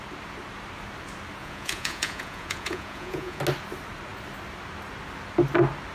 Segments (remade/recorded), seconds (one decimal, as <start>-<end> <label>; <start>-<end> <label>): 0.0-1.4 recorded; 1.4-3.4 remade; 3.4-5.9 recorded